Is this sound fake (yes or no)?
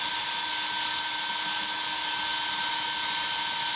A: no